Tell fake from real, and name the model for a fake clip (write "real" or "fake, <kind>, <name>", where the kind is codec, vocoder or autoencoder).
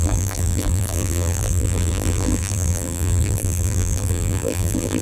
fake, vocoder, BigVGAN v2